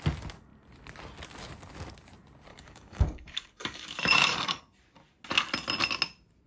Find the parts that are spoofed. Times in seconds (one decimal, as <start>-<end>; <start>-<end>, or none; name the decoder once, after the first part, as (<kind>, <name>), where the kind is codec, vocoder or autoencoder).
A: 2.5-4.6 (codec, DAC)